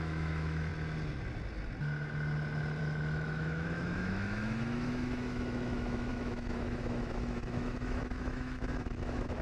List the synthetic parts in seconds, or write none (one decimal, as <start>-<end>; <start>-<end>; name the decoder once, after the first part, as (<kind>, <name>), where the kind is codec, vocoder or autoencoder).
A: 0.0-0.7 (autoencoder, DAC-VAE); 2.8-9.4